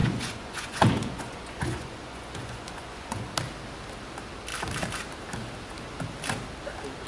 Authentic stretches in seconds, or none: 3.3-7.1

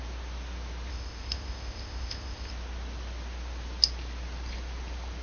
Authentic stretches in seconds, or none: 0.0-0.9; 2.5-5.2

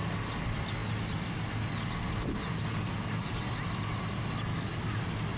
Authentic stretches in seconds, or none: 0.0-4.5; 5.0-5.4

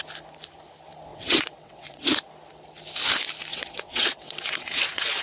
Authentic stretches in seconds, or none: 0.0-1.1; 2.0-3.5

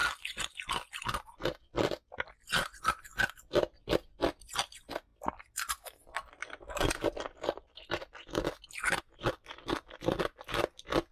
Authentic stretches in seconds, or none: 0.0-11.1

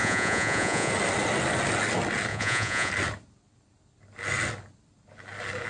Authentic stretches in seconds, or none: 0.9-2.3; 2.9-5.7